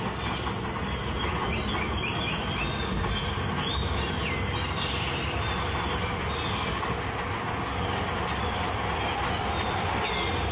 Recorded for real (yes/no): yes